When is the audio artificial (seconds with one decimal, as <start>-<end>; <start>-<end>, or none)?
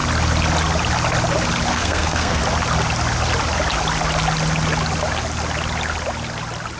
1.7-2.4